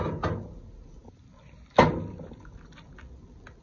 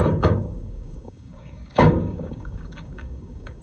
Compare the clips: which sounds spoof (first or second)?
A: second